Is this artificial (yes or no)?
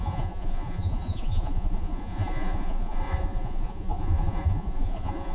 yes